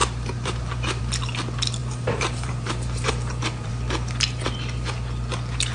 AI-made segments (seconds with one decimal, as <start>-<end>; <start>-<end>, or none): 0.0-1.0; 1.8-3.7